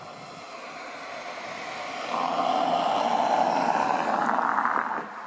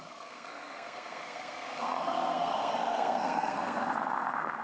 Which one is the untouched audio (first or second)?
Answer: first